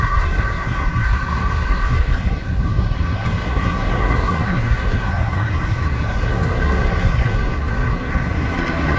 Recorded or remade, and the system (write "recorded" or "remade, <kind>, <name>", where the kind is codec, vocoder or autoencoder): remade, codec, SNAC